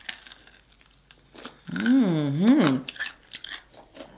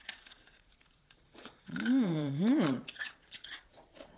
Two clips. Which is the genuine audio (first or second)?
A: first